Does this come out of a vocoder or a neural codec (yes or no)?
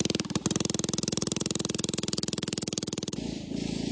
no